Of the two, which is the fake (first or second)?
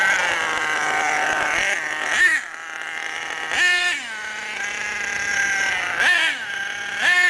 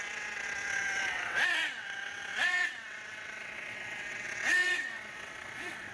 second